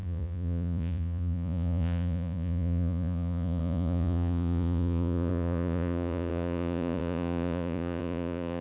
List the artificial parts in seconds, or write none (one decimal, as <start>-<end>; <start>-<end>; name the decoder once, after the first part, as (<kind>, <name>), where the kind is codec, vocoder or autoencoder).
0.0-8.6 (vocoder, Vocos)